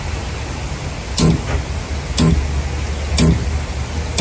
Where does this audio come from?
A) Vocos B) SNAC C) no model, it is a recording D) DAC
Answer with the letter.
C